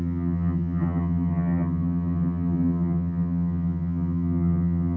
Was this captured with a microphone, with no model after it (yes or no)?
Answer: no